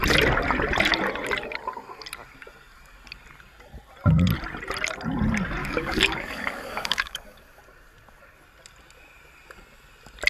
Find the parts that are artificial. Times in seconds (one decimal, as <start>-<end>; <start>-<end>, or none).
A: 5.6-7.6